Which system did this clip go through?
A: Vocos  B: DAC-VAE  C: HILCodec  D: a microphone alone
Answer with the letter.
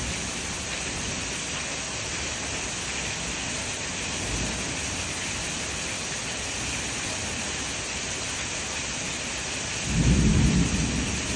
D